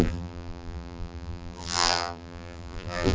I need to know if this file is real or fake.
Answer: fake